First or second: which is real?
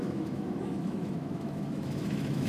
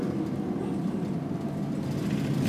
second